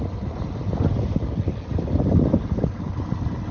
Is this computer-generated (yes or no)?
no